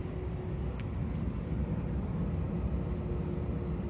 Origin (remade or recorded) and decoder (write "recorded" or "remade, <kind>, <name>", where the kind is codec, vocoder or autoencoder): recorded